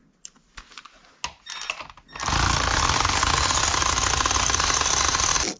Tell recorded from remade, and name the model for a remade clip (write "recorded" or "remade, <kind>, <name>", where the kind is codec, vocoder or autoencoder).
recorded